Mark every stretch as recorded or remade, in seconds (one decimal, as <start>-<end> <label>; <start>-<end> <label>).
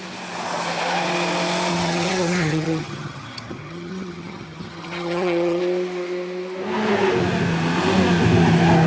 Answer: 0.0-1.7 recorded; 1.7-5.6 remade; 5.6-8.9 recorded